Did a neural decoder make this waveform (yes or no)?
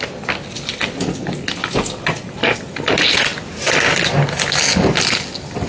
no